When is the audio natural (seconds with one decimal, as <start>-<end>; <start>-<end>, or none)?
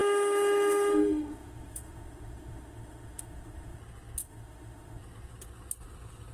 3.8-4.2; 5.0-6.3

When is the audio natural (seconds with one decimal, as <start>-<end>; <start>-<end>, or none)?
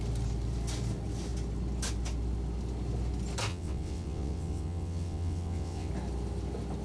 0.0-3.5; 5.9-6.8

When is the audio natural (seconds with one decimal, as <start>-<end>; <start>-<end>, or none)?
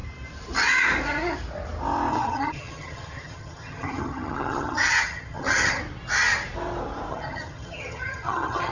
0.0-2.1; 5.8-7.1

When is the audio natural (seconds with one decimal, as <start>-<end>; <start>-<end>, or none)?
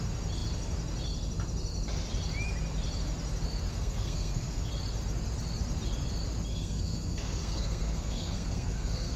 0.0-3.7; 4.7-6.5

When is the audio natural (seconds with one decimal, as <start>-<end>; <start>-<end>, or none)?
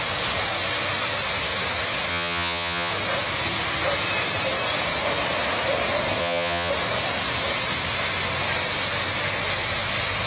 0.0-2.1; 2.9-6.2; 6.7-10.3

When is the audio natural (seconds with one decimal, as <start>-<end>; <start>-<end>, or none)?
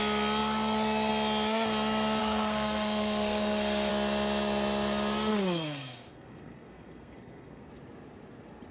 0.0-2.2; 3.9-5.3; 7.7-8.7